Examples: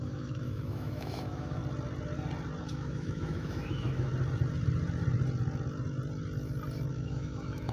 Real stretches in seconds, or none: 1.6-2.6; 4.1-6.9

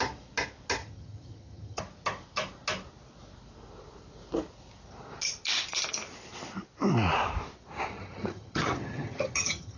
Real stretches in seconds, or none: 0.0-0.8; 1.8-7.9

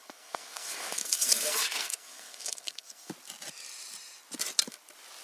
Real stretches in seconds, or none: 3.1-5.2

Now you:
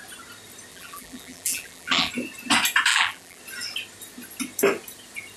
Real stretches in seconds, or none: 0.0-0.7; 2.1-2.9; 3.4-5.4